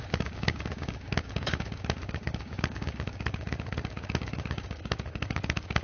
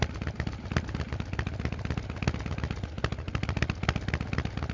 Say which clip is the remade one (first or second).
first